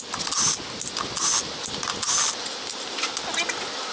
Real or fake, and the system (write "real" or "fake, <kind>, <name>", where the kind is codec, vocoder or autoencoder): real